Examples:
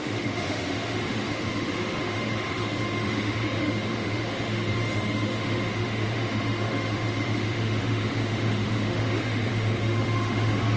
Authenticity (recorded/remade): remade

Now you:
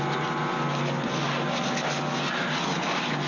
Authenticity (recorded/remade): recorded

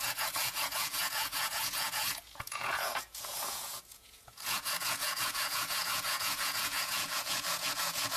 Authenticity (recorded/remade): remade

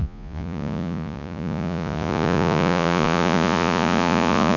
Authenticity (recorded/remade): remade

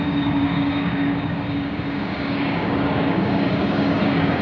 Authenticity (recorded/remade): remade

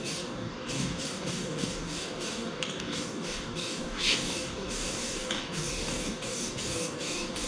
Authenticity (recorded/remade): remade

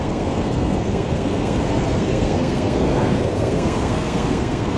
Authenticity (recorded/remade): remade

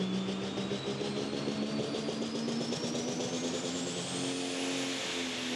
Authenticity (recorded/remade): recorded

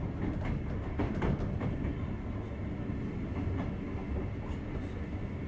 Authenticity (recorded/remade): recorded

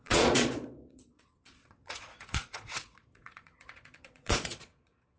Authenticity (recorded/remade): remade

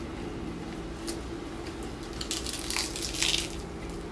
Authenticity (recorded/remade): recorded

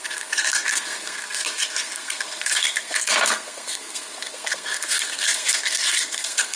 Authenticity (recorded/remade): remade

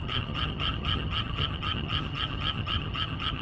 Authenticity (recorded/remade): remade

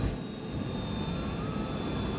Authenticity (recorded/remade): recorded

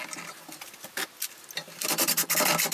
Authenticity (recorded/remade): recorded